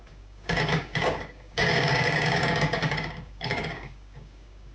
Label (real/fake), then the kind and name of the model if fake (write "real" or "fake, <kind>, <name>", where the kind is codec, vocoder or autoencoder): fake, codec, DAC